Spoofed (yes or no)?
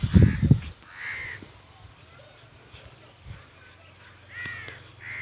no